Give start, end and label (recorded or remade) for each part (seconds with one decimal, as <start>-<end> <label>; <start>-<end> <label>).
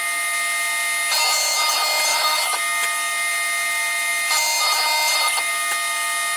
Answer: 0.0-2.1 recorded; 2.1-2.6 remade; 2.6-6.4 recorded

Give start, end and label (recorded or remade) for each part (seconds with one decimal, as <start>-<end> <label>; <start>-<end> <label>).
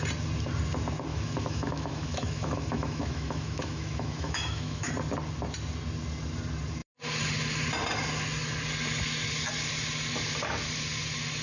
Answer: 0.0-1.1 recorded; 1.1-4.9 remade; 4.9-11.4 recorded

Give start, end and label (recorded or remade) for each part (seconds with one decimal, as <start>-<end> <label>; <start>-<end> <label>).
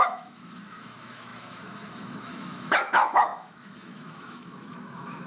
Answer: 0.0-5.3 remade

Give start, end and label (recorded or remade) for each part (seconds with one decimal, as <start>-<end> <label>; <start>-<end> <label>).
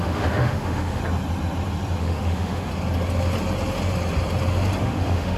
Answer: 0.0-1.0 remade; 1.0-2.0 recorded; 2.0-2.7 remade; 2.7-4.8 recorded; 4.8-5.4 remade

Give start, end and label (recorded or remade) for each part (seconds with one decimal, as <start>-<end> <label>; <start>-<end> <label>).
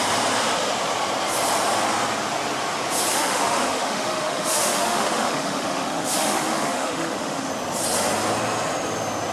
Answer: 0.0-3.1 recorded; 3.1-7.5 remade; 7.5-9.3 recorded